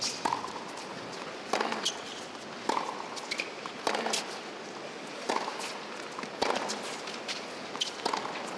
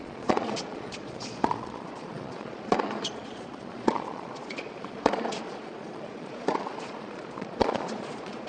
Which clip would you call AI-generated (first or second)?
second